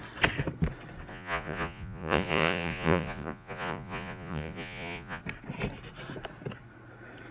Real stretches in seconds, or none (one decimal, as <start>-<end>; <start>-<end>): 0.0-1.1; 5.2-7.3